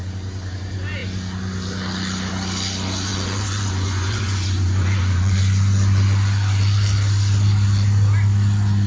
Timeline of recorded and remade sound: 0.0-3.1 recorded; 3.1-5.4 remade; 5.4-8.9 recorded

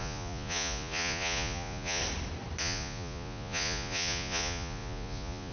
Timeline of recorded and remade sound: 0.0-2.0 remade; 2.0-2.6 recorded; 2.6-5.5 remade

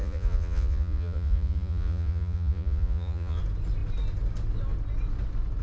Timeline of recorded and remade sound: 0.0-3.4 remade; 3.4-5.6 recorded

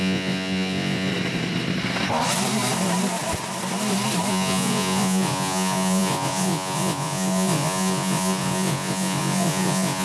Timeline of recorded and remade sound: 0.0-1.1 remade; 1.1-4.3 recorded; 4.3-10.0 remade

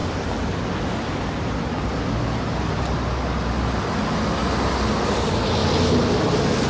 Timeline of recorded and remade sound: 0.0-6.7 recorded

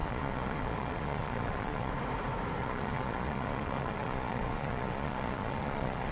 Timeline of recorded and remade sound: 0.0-1.9 remade; 1.9-2.6 recorded; 2.6-6.1 remade

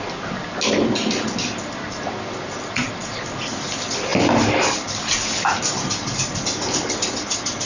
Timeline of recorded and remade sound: 0.0-7.7 recorded

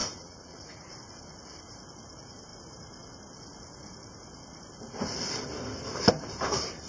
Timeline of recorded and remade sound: 0.0-0.9 remade; 0.9-6.9 recorded